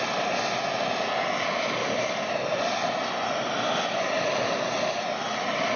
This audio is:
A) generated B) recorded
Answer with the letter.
B